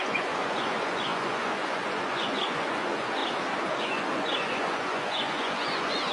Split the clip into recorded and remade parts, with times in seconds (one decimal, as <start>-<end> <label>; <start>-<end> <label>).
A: 0.0-3.2 remade; 3.2-3.8 recorded; 3.8-6.1 remade